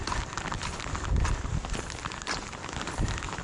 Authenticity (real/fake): real